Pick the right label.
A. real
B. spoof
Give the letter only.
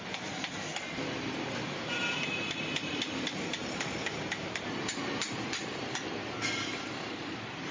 B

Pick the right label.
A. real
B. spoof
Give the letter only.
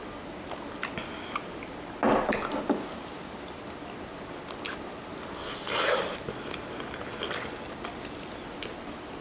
A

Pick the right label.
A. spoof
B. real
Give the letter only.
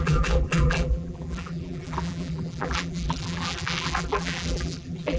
A